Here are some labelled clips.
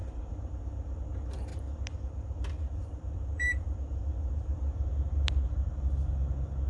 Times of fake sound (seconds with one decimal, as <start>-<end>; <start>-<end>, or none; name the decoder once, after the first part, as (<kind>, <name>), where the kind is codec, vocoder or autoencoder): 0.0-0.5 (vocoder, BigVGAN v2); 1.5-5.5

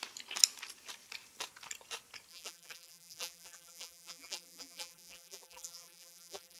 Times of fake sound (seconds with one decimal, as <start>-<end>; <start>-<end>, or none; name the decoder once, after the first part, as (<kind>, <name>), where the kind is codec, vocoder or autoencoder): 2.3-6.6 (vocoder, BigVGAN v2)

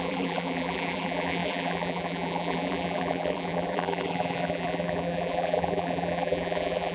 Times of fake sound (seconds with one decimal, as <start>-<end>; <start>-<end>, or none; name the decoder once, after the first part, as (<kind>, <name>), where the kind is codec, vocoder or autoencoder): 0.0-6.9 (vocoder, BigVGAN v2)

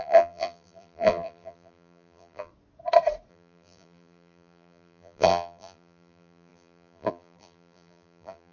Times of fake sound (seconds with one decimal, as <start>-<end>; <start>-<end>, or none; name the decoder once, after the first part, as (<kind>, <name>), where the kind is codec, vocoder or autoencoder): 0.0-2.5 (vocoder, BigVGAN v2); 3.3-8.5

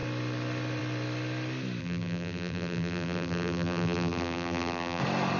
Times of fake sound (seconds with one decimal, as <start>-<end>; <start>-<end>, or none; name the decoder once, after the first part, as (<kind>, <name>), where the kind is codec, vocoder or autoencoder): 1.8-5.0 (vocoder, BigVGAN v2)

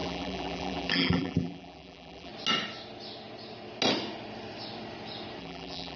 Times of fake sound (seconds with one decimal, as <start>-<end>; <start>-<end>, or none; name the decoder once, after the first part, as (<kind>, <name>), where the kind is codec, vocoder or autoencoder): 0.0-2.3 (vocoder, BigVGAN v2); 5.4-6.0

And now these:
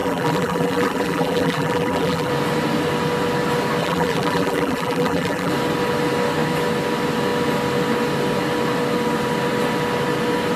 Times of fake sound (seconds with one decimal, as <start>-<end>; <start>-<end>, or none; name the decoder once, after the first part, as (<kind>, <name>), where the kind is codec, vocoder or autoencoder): 0.0-2.3 (vocoder, BigVGAN v2); 3.8-5.5

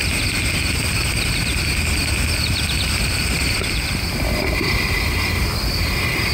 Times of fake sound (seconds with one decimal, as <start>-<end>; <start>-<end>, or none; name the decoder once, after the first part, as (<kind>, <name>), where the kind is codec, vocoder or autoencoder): 0.0-3.8 (vocoder, BigVGAN v2)